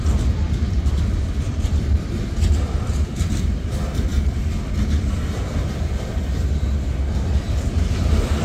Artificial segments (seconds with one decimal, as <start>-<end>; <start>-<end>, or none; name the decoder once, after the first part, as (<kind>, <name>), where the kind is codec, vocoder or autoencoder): 0.0-8.4 (vocoder, BigVGAN v2)